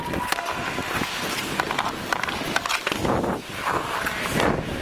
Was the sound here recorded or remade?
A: recorded